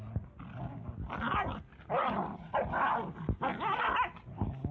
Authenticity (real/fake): real